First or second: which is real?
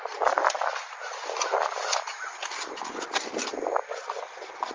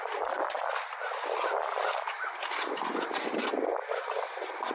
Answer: first